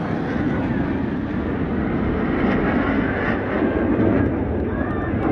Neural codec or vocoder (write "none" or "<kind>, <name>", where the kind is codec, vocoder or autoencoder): none